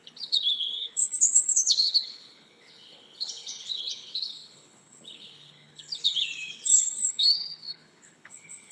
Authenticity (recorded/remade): remade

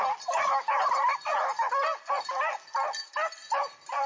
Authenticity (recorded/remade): recorded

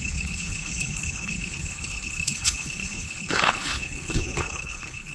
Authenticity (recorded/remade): remade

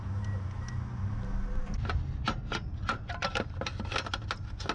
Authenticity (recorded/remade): recorded